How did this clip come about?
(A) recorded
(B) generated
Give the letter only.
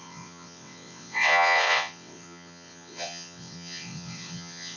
B